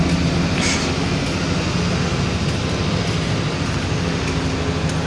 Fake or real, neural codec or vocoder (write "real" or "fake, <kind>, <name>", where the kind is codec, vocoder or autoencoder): real